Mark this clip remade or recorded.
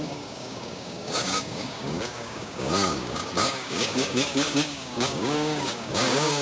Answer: remade